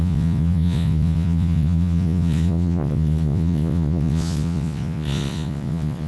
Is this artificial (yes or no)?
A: yes